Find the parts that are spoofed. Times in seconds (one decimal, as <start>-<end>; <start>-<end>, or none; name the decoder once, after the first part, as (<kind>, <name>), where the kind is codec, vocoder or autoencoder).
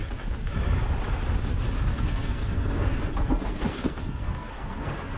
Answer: 1.9-5.2 (codec, SNAC)